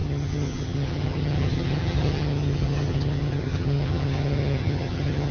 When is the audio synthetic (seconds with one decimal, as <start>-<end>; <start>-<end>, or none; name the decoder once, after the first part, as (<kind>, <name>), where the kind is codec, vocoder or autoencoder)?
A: 0.0-5.3 (vocoder, HiFi-GAN)